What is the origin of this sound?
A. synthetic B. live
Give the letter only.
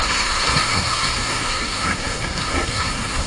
A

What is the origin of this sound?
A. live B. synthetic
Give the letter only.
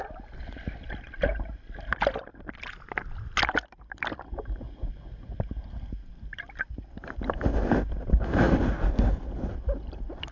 A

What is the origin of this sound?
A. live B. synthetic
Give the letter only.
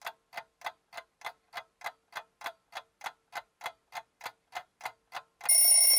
A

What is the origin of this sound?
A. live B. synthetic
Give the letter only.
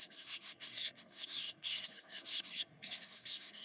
B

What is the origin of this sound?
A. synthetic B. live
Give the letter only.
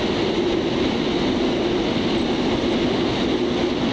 B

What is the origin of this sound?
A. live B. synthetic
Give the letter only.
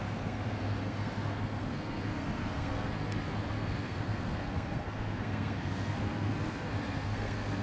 B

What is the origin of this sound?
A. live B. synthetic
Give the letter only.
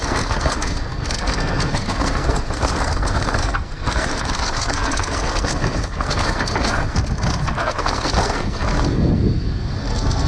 B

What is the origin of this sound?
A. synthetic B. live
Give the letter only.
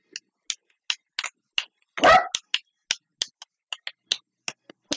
B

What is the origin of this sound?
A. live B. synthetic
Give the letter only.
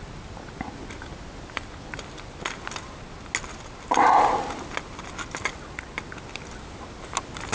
A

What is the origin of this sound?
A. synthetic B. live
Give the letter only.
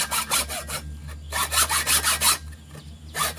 B